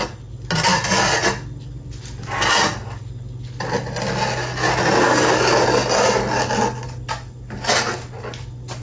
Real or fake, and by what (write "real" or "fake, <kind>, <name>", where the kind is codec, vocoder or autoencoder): real